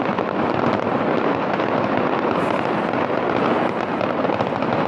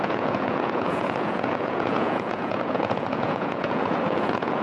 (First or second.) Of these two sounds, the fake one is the second